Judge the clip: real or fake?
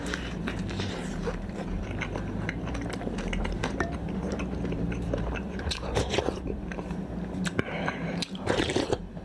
fake